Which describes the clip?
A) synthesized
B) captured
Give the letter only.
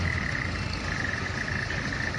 B